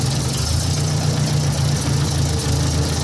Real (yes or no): yes